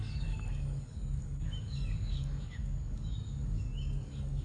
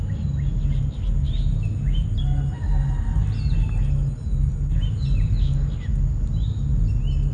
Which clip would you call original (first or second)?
second